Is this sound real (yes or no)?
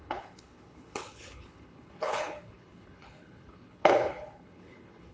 no